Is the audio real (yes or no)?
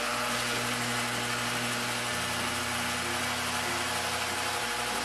yes